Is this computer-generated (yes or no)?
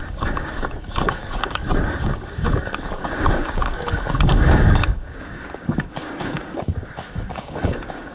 yes